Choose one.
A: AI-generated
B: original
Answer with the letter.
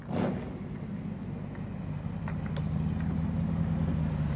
B